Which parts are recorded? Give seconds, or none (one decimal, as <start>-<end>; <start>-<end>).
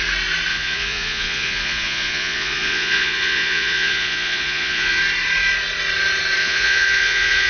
0.0-0.5; 5.0-6.4